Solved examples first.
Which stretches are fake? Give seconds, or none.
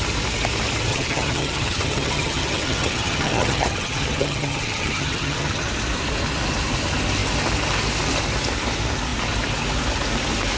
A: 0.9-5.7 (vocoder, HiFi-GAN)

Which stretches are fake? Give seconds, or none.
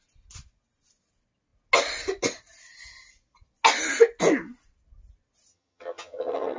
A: 5.5-6.6 (vocoder, HiFi-GAN)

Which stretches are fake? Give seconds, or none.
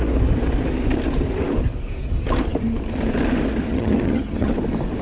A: 3.7-4.5 (vocoder, HiFi-GAN)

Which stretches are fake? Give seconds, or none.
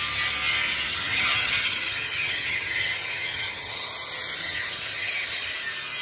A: 0.9-3.9 (vocoder, HiFi-GAN); 4.4-5.5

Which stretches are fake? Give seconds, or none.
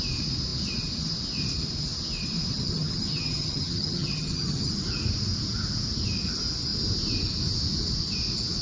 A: 2.5-4.7 (vocoder, HiFi-GAN)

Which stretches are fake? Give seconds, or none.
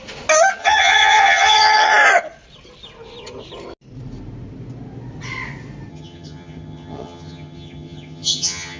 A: 0.6-1.9 (vocoder, HiFi-GAN); 5.9-8.8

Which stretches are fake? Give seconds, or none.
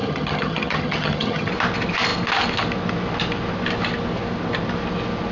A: 0.0-1.5 (vocoder, HiFi-GAN)